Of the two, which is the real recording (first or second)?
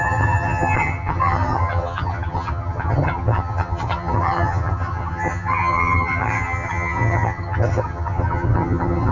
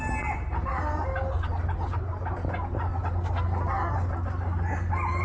second